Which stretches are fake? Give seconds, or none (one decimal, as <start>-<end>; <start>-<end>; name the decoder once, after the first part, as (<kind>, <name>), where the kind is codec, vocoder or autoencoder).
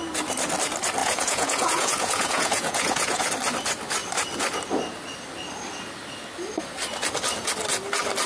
1.0-3.3 (vocoder, Vocos)